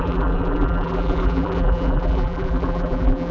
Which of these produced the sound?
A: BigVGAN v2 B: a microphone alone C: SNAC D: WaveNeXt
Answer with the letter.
A